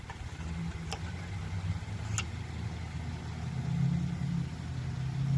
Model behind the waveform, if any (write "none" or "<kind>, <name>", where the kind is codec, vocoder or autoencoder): none